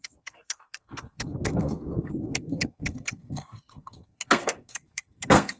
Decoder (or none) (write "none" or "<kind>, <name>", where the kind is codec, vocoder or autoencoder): codec, SNAC